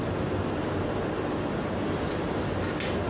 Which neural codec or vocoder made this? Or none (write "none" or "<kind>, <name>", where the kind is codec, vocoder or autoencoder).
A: none